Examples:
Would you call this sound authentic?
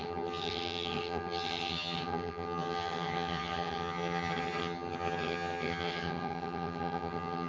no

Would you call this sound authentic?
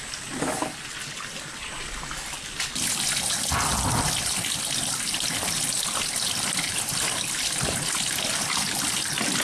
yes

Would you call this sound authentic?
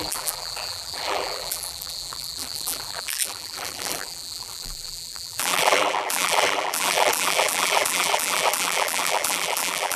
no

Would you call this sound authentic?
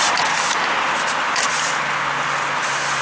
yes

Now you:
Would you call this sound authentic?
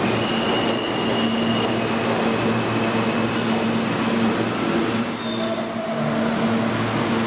yes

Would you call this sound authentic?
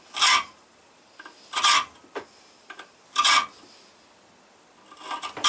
yes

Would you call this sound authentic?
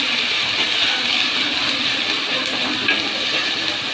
yes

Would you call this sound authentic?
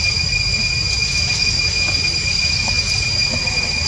yes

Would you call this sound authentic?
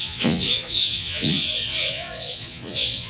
no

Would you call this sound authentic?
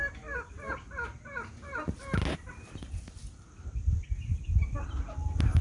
yes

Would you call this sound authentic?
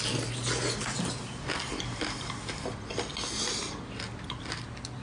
yes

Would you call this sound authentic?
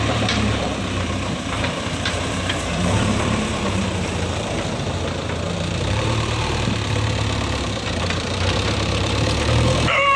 no